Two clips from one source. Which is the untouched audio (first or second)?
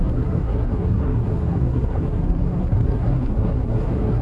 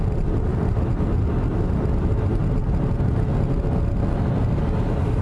second